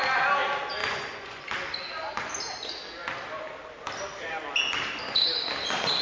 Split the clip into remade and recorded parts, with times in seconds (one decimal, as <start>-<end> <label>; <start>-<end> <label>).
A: 0.0-0.8 recorded; 0.8-1.4 remade; 1.4-6.0 recorded